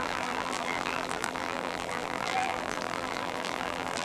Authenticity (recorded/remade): remade